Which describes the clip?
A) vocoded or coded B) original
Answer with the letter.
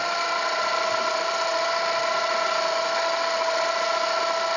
B